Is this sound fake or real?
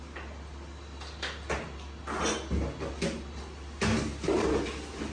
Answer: real